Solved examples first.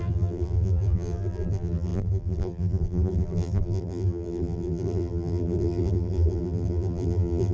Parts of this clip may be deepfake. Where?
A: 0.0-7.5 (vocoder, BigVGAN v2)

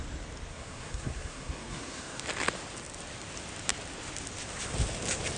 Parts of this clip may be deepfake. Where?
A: 0.5-2.2 (codec, SNAC)

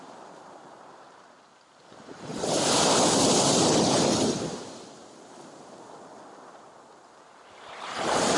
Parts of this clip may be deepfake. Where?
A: 0.0-2.3 (vocoder, BigVGAN v2); 5.0-8.4